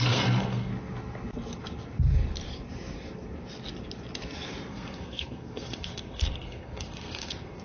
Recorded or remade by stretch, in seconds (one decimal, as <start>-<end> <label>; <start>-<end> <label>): 0.0-0.7 remade; 0.7-4.7 recorded; 4.7-7.6 remade